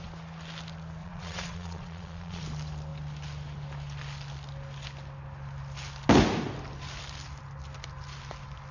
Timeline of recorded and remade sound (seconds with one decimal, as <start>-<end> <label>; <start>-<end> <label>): 0.0-1.0 recorded; 1.0-2.4 remade; 2.4-8.7 recorded